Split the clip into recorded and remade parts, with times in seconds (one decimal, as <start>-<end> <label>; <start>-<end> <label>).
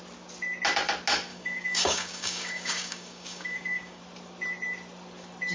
0.0-1.3 recorded; 1.3-4.0 remade; 4.0-5.5 recorded